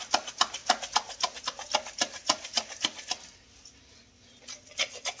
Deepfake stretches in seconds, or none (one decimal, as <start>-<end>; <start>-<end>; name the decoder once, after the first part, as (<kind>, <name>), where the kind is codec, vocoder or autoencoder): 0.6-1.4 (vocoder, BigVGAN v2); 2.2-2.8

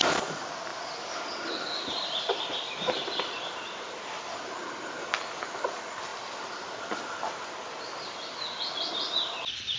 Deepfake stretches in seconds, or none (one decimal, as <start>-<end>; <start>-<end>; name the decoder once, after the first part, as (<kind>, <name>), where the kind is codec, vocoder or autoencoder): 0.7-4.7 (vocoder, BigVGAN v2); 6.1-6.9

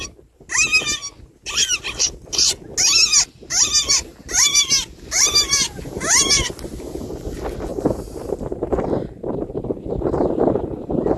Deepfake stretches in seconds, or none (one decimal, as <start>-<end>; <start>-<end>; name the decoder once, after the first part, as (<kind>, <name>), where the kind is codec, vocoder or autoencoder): 7.7-11.2 (vocoder, BigVGAN v2)

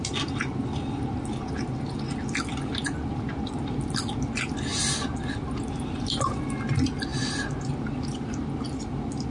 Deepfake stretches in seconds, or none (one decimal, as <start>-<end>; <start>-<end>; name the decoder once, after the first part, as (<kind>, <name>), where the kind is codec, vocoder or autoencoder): 0.0-7.1 (vocoder, BigVGAN v2); 7.7-9.3